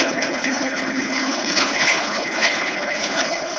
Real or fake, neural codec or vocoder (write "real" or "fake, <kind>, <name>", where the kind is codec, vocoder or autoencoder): fake, codec, HILCodec